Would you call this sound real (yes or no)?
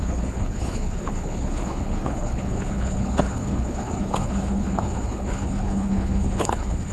no